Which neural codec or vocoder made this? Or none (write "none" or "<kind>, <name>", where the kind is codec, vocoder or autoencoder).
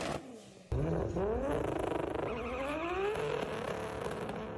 none